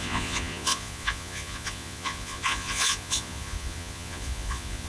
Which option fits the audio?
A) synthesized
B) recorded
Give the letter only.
A